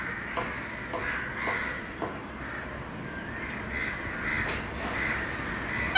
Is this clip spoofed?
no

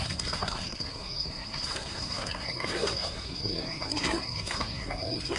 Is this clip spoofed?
yes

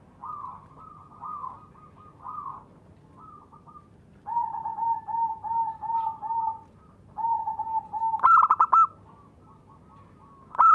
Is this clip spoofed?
no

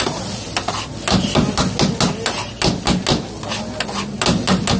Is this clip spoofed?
no